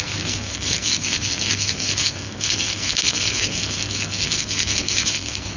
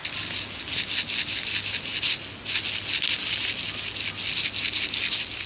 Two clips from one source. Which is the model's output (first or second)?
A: first